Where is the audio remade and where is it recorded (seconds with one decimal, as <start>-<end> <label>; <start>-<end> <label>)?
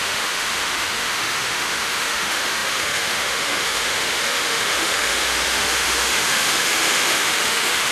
0.0-7.9 remade